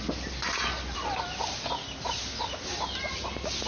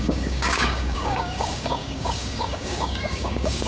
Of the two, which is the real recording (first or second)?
first